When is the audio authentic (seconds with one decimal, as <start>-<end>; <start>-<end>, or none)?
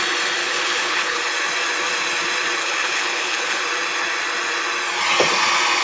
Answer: 0.0-0.4; 1.2-2.6; 3.6-5.8